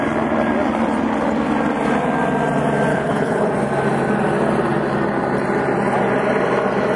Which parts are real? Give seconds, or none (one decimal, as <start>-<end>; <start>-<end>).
0.0-2.9; 3.5-7.0